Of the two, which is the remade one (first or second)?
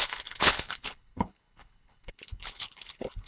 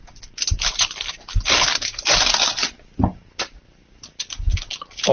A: first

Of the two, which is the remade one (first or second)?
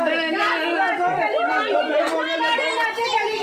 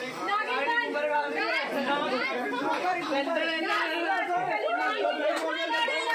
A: second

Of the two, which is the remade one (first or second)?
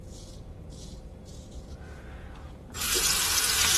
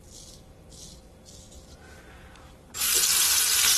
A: first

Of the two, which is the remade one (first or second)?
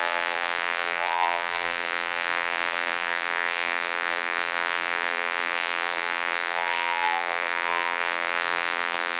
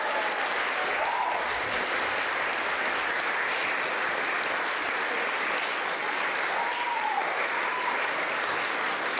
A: first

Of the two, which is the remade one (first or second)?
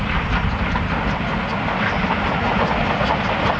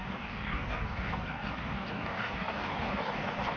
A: second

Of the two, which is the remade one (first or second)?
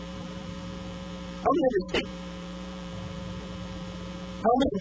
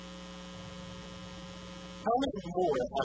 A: first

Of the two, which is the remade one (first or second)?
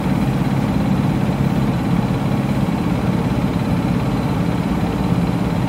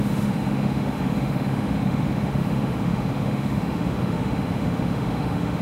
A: second